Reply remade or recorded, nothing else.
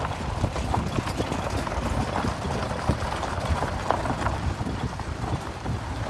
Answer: recorded